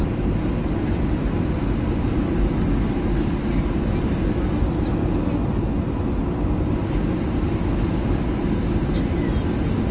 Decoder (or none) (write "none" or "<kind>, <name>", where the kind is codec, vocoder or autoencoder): none